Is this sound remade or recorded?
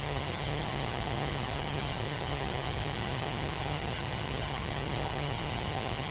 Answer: remade